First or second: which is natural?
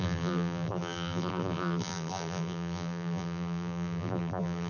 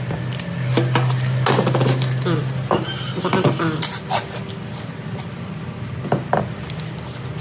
second